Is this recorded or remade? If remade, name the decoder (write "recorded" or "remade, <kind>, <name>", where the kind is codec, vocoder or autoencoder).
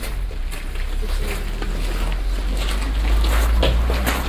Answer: recorded